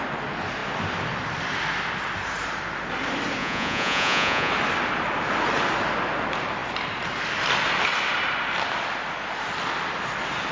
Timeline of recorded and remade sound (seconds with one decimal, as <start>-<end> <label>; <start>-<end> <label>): 0.0-3.4 recorded; 3.4-4.5 remade; 4.5-10.5 recorded